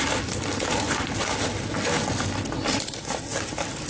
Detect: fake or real real